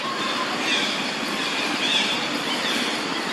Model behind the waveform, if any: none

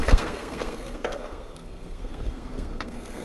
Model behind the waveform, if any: codec, SNAC